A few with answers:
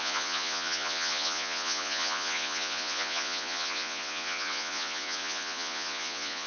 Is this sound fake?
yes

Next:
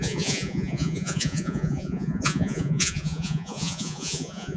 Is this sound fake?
yes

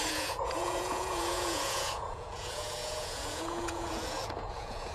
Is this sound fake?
yes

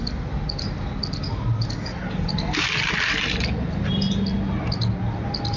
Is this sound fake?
no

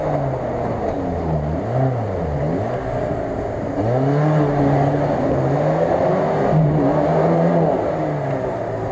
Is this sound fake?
no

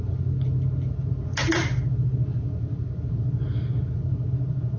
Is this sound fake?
no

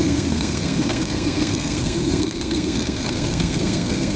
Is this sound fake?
yes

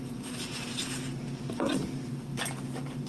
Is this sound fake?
no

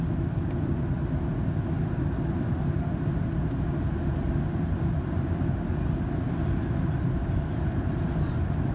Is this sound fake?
no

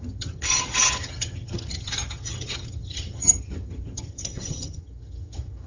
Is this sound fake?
yes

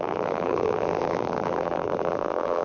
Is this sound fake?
yes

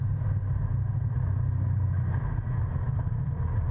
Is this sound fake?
no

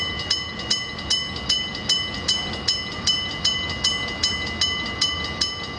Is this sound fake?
no